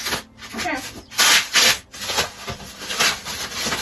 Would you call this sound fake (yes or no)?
no